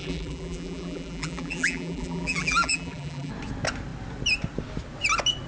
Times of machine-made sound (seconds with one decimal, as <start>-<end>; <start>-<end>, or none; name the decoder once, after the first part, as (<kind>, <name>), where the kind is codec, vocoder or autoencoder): 0.0-3.3 (vocoder, BigVGAN v2)